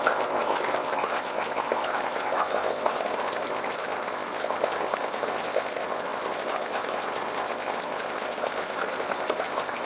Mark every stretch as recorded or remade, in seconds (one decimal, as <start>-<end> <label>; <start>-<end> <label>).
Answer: 0.0-9.9 remade